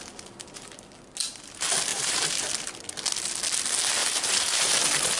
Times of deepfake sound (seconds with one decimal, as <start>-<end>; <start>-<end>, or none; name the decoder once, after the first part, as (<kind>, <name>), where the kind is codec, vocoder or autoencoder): 1.9-2.8 (vocoder, BigVGAN v2); 4.0-4.7